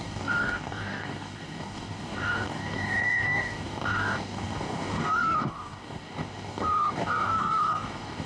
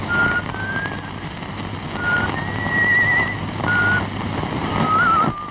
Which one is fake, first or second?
first